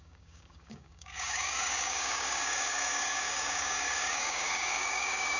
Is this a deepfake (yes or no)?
yes